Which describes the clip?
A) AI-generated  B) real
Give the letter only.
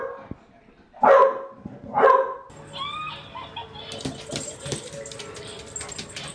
B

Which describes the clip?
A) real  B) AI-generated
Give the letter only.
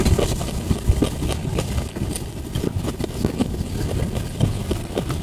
A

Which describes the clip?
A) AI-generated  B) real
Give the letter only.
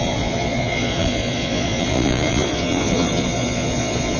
A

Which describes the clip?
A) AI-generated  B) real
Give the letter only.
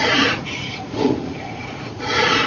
A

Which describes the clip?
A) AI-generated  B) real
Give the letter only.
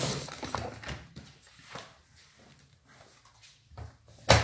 B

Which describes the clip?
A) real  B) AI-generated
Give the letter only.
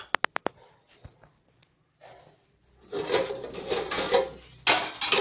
A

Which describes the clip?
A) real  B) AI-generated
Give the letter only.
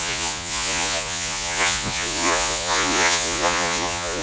B